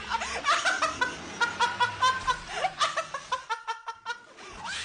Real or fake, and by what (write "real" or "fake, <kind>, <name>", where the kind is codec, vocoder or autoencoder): real